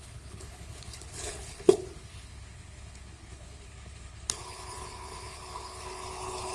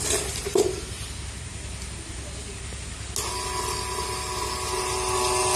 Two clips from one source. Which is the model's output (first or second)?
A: first